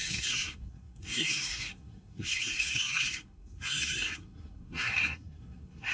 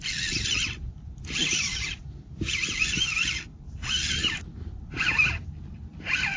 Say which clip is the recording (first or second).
second